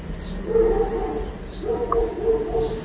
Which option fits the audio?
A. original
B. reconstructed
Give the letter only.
A